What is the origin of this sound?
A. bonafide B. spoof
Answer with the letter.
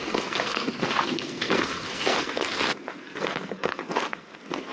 B